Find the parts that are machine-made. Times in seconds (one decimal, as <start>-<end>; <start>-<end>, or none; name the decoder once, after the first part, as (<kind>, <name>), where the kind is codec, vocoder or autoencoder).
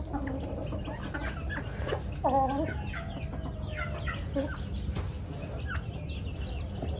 none